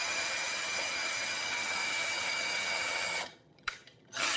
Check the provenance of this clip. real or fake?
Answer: fake